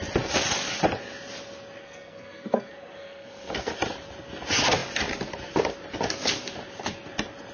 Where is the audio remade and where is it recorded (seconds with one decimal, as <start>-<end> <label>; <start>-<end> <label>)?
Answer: 0.0-1.8 recorded; 1.8-3.7 remade; 3.7-7.5 recorded